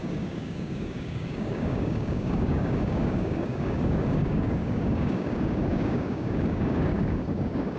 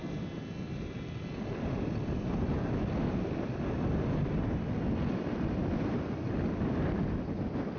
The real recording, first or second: second